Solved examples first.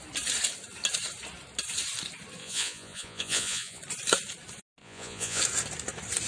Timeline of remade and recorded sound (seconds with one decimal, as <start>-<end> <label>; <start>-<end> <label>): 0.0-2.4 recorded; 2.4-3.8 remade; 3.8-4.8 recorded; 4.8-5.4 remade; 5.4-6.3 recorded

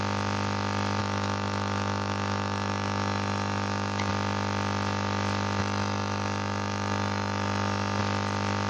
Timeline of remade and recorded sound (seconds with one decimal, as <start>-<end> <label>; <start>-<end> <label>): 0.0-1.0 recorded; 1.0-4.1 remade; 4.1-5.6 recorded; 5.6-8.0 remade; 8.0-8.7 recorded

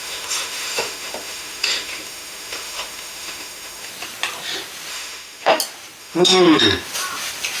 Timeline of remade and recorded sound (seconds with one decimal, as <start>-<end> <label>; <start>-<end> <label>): 0.0-3.9 remade; 3.9-4.9 recorded; 4.9-5.6 remade; 5.6-6.0 recorded; 6.0-6.6 remade; 6.6-7.6 recorded

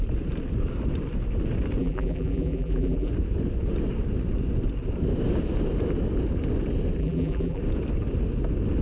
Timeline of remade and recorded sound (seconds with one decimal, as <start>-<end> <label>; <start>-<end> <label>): 0.0-1.8 recorded; 1.8-3.1 remade; 3.1-7.0 recorded; 7.0-7.6 remade; 7.6-8.8 recorded